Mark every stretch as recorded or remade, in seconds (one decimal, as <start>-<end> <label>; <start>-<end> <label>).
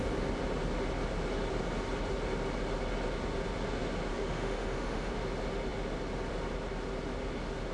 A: 0.0-4.1 recorded; 4.1-5.1 remade; 5.1-7.7 recorded